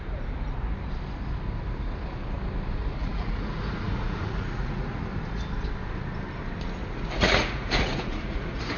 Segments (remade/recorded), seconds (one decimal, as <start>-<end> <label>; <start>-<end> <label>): 0.0-3.0 recorded; 3.0-5.1 remade; 5.1-6.8 recorded; 6.8-8.8 remade